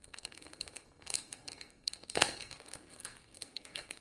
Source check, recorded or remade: remade